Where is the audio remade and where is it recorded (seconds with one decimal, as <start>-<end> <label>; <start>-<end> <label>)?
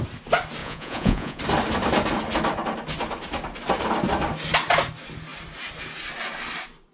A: 0.0-0.6 recorded; 0.6-1.4 remade; 1.4-6.9 recorded